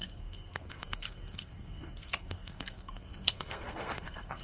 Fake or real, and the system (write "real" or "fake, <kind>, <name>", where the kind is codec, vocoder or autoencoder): fake, codec, SNAC